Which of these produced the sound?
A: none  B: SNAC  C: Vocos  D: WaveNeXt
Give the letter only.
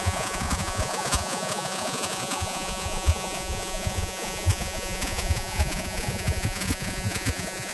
C